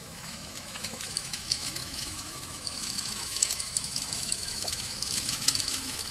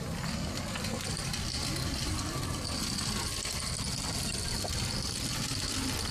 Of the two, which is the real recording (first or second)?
second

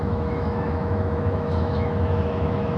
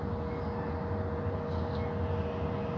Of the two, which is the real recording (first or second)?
second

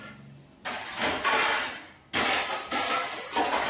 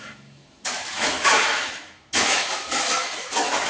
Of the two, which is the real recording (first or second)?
first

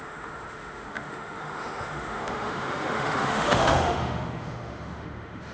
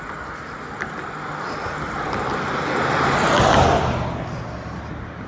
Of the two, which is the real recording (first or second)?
second